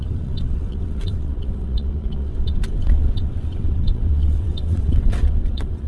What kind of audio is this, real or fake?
fake